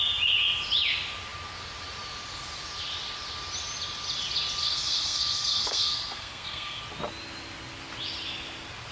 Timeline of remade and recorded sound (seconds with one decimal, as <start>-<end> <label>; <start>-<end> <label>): 0.0-4.6 recorded; 4.6-6.8 remade; 6.8-8.9 recorded